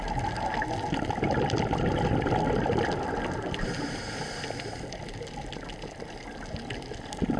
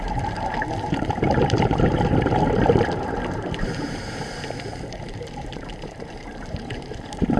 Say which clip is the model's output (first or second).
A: second